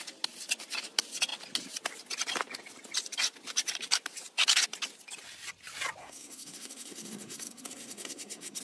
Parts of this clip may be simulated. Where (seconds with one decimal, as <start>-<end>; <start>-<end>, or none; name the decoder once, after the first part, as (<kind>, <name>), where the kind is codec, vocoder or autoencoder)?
6.0-8.6 (codec, SNAC)